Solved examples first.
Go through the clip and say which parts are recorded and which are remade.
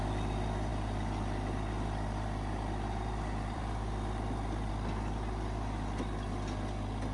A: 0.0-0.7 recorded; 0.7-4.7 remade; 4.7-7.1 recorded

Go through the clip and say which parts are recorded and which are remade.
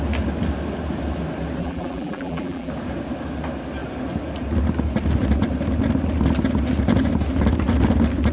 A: 0.0-1.6 recorded; 1.6-2.7 remade; 2.7-8.3 recorded